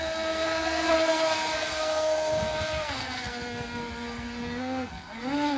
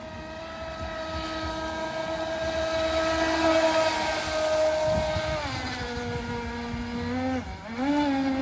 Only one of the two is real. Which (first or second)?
second